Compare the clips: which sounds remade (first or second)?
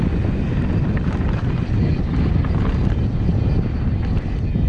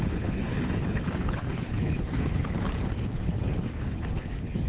second